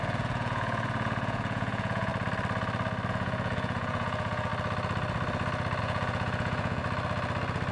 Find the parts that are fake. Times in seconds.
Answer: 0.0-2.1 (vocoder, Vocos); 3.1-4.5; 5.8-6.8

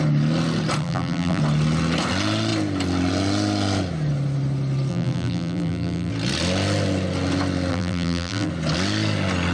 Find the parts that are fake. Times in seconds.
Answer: 0.8-1.4 (vocoder, BigVGAN v2); 4.9-6.1; 7.7-8.5

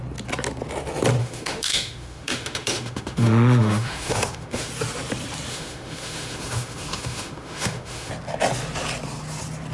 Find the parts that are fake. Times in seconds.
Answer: 1.2-4.7 (autoencoder, DAC-VAE); 5.5-8.1

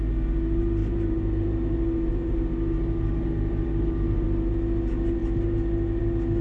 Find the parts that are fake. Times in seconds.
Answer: 0.8-4.5 (vocoder, BigVGAN v2)